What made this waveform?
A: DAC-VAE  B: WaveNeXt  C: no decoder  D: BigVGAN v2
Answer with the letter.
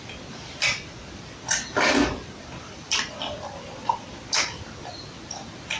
C